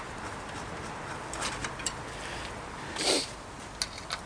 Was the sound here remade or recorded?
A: recorded